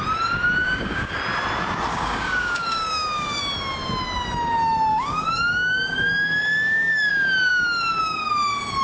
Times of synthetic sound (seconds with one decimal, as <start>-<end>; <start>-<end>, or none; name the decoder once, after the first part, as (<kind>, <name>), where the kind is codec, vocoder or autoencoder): 0.6-1.2 (codec, DAC); 1.9-3.4; 4.9-7.1; 7.5-8.3